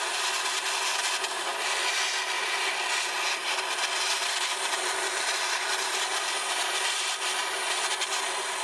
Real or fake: real